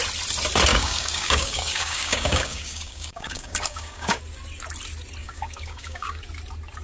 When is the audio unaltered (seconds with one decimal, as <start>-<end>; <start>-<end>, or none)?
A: 0.0-0.7; 4.2-5.2; 6.2-6.8